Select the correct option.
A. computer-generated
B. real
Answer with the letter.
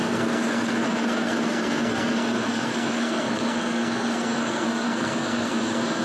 A